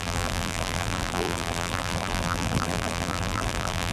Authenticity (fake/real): fake